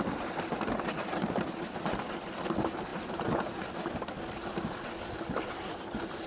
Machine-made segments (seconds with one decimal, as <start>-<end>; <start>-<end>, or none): none